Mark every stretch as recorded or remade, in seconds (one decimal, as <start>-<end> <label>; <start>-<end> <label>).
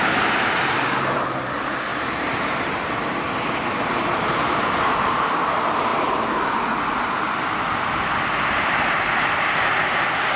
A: 0.0-5.9 remade; 5.9-7.3 recorded; 7.3-10.4 remade